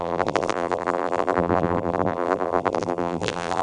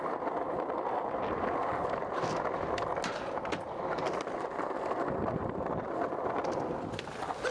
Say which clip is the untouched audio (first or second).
second